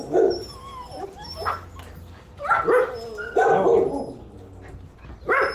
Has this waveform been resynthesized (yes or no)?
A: no